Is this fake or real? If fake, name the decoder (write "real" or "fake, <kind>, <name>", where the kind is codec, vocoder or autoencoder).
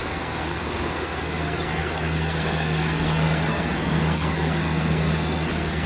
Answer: fake, codec, SNAC